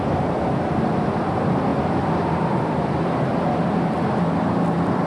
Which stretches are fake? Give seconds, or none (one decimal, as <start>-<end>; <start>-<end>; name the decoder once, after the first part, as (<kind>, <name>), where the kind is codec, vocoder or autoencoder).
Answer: 1.7-3.5 (vocoder, BigVGAN v2)